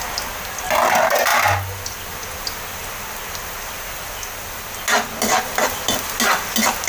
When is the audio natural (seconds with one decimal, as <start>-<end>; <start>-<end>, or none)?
0.0-6.9